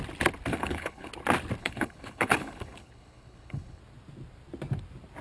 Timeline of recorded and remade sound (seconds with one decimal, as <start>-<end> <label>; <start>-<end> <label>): 0.0-0.5 recorded; 0.5-1.1 remade; 1.1-1.6 recorded; 1.6-3.8 remade; 3.8-5.2 recorded